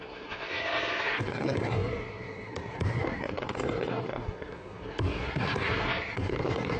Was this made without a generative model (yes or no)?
no